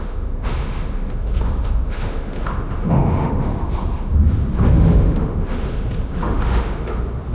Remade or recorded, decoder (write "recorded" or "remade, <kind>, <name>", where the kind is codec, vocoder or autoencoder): remade, autoencoder, DAC-VAE